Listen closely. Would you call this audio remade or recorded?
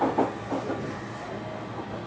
recorded